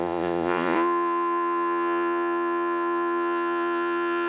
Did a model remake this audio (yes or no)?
yes